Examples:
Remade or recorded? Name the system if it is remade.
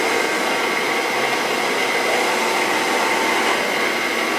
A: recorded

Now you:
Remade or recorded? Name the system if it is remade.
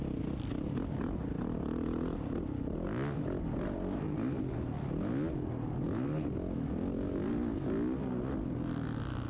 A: recorded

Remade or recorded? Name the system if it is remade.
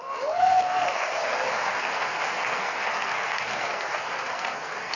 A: remade, codec, SNAC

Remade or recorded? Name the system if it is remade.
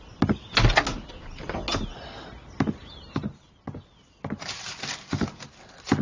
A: recorded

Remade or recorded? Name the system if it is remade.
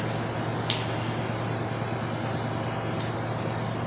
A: recorded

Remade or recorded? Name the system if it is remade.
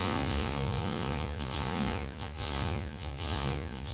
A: remade, vocoder, Vocos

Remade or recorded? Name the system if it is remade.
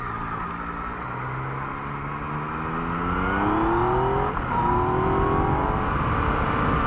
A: recorded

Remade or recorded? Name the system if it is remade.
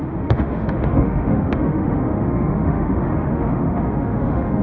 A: remade, autoencoder, DAC-VAE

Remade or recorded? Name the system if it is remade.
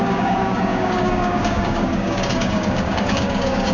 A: remade, codec, DAC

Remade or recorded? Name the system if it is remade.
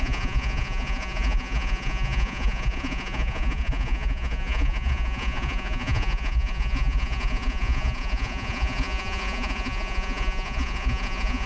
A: remade, vocoder, Vocos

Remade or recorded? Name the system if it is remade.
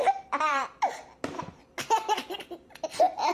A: remade, vocoder, BigVGAN v2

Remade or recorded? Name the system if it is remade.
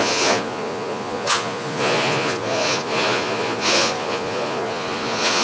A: remade, vocoder, Vocos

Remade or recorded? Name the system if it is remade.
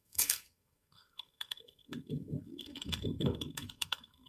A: remade, codec, SNAC